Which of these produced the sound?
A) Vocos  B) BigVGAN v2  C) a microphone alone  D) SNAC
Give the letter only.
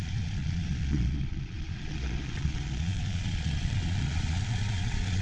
A